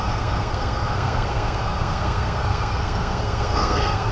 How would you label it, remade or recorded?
remade